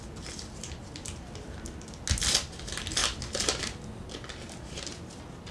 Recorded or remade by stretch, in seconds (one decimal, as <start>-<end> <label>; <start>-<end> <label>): 0.0-5.5 recorded

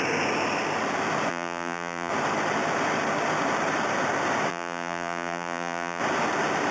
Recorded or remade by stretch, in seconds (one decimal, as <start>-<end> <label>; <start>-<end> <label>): 0.0-1.3 recorded; 1.3-2.1 remade; 2.1-4.5 recorded; 4.5-6.0 remade; 6.0-6.7 recorded

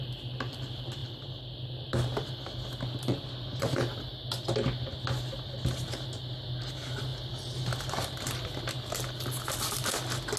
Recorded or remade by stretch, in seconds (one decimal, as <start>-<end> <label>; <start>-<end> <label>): 0.0-10.4 recorded

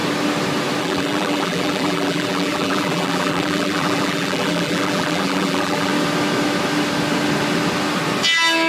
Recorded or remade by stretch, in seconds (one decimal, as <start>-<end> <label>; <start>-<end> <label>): 0.0-0.8 recorded; 0.8-5.9 remade; 5.9-8.7 recorded

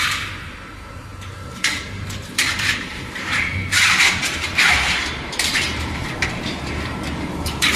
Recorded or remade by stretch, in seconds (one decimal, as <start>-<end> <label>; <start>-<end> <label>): 0.0-7.8 remade